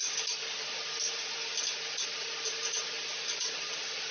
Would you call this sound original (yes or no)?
yes